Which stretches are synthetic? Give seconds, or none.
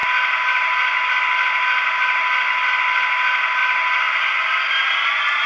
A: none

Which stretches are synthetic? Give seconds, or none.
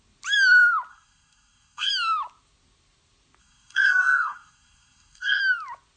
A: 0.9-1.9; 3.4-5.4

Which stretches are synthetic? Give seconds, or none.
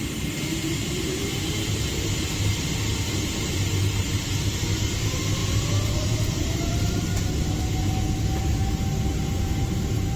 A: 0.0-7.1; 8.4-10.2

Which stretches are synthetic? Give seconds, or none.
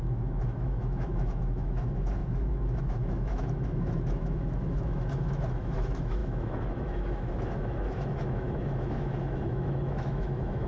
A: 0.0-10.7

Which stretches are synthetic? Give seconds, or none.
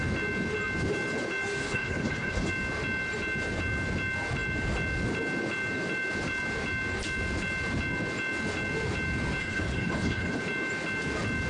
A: 1.6-2.5; 9.4-10.4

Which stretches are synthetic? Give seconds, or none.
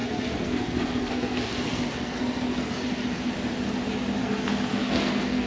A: 0.0-3.3; 4.2-5.5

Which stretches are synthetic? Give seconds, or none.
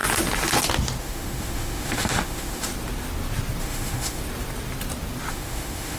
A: 1.0-2.7; 3.6-4.2; 5.3-6.0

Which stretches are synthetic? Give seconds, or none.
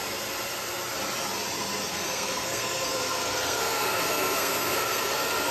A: 1.9-5.5